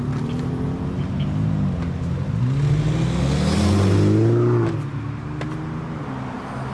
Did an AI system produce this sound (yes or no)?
no